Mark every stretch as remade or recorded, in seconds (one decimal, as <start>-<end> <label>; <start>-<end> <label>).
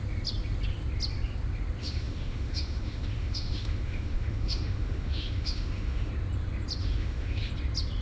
0.0-1.8 recorded; 1.8-6.1 remade; 6.1-6.8 recorded; 6.8-7.5 remade; 7.5-8.0 recorded